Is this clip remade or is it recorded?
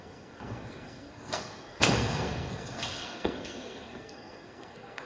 remade